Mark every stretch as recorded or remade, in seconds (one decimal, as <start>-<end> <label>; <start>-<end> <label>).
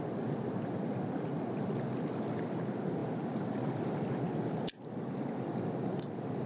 0.0-6.5 recorded